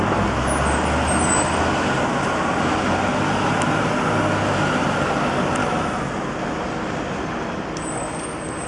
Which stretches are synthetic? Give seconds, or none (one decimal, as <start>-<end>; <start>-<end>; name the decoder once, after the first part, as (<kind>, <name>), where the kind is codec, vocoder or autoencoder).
5.6-6.1 (autoencoder, DAC-VAE)